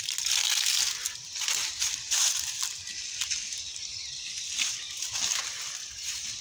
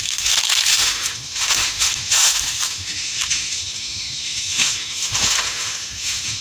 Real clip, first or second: first